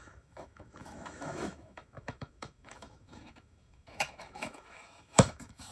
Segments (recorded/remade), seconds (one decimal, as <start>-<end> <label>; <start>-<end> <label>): 0.0-5.7 remade